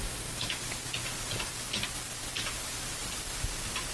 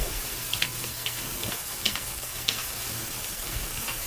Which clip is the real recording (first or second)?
first